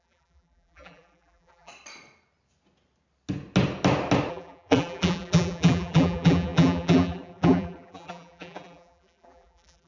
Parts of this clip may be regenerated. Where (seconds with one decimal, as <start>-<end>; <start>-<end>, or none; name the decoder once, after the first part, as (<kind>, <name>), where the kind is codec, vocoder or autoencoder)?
0.0-1.7 (vocoder, BigVGAN v2); 4.3-9.9